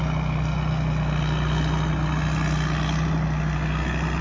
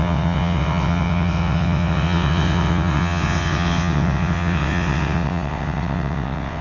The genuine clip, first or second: first